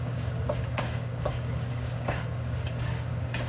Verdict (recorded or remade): remade